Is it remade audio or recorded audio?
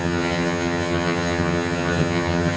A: remade